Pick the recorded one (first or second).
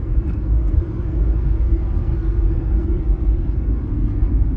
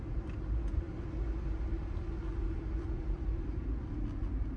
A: second